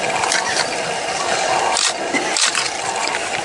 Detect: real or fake real